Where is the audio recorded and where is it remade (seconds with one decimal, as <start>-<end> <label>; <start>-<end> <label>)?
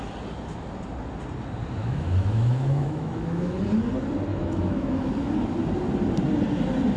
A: 0.0-1.8 recorded; 1.8-3.6 remade; 3.6-4.3 recorded; 4.3-5.1 remade; 5.1-7.0 recorded